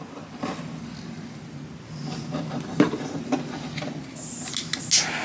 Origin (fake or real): real